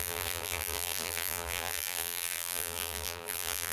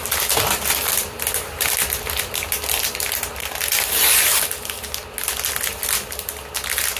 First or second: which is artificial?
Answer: first